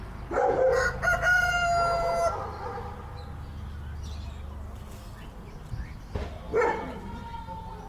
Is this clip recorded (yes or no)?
yes